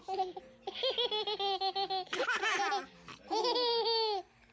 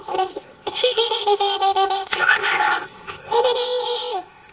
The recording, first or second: first